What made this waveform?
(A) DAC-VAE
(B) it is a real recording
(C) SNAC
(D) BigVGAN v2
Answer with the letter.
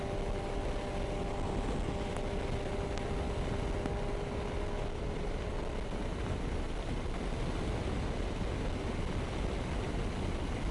B